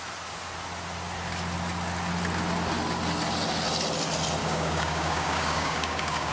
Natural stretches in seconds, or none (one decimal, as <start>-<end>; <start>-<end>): 0.0-4.4